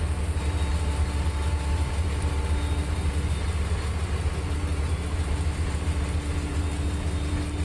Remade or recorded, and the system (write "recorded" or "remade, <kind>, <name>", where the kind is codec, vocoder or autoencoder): recorded